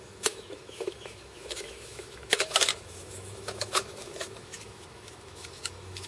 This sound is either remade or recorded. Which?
remade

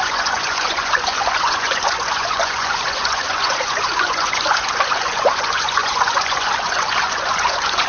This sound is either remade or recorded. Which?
remade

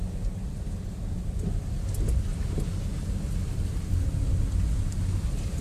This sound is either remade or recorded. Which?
recorded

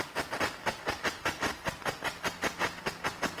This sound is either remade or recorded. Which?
recorded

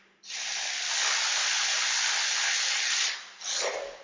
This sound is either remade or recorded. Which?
recorded